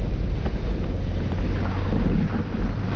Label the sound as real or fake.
real